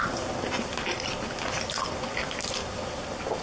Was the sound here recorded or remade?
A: recorded